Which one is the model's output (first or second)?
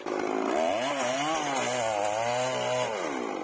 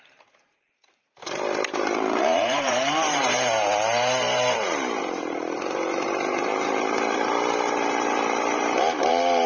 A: second